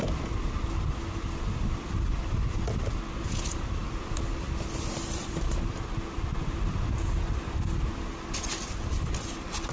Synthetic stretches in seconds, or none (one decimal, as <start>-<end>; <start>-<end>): none